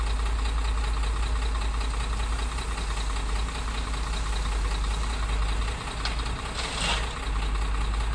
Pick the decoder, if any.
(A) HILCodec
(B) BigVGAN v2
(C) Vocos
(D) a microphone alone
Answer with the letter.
D